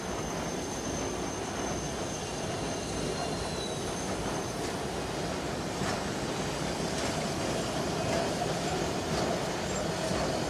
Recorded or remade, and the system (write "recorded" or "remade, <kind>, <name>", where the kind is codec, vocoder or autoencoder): recorded